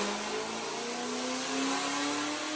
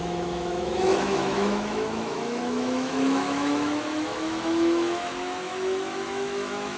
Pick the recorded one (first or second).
first